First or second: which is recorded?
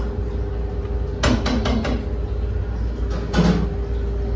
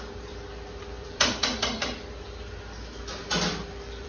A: first